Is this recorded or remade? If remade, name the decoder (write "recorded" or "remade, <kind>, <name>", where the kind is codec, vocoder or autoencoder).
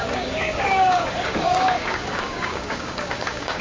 remade, codec, DAC